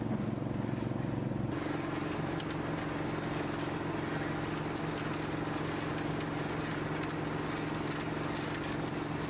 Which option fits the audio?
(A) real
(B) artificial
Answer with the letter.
A